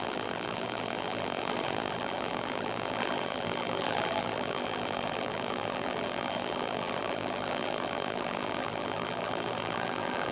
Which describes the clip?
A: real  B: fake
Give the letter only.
B